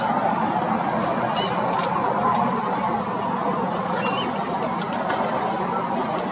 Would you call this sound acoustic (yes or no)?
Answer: yes